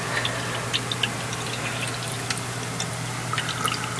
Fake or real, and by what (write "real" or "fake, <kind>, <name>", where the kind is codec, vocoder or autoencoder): real